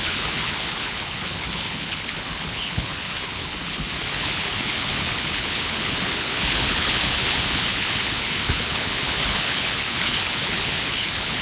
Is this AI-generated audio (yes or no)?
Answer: yes